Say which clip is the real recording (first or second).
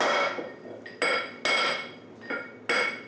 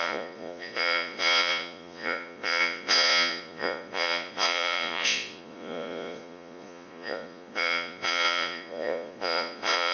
first